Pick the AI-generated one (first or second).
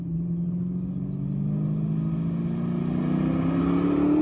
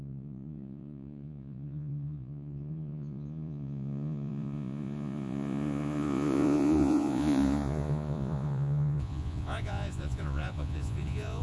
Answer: second